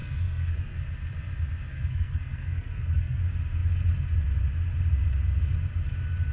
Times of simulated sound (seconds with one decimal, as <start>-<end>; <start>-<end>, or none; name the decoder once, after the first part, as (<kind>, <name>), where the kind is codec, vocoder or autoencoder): 0.0-0.8 (codec, SNAC); 1.7-3.2